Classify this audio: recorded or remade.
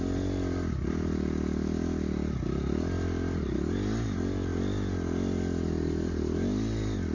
recorded